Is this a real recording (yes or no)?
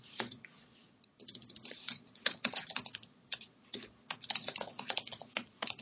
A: no